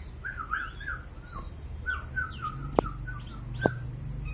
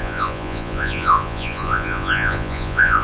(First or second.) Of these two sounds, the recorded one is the first